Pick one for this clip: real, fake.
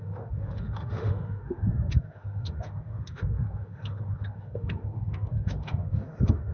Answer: fake